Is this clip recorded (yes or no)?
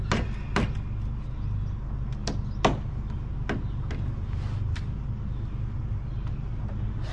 yes